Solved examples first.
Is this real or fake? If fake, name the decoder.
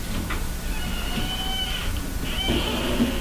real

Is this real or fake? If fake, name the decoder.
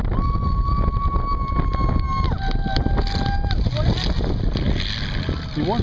real